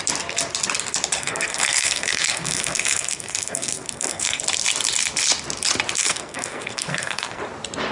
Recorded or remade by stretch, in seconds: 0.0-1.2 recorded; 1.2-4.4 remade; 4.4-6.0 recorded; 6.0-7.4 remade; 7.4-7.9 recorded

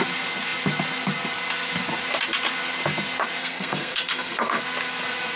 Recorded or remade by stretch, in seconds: 0.0-3.4 recorded; 3.4-4.6 remade; 4.6-5.4 recorded

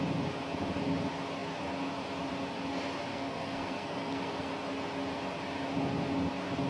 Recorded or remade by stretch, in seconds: 0.0-3.1 recorded; 3.1-4.5 remade; 4.5-6.7 recorded

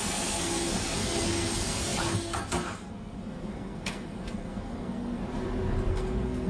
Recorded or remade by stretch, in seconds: 0.0-5.2 remade; 5.2-5.9 recorded; 5.9-6.5 remade